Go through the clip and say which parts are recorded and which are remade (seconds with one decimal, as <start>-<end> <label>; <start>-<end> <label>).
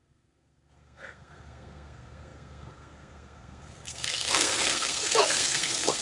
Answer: 0.0-6.0 remade